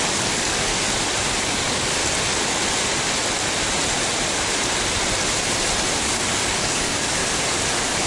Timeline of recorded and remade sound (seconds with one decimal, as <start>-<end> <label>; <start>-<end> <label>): 0.0-0.7 remade; 0.7-1.4 recorded; 1.4-2.0 remade; 2.0-6.0 recorded; 6.0-7.2 remade; 7.2-8.1 recorded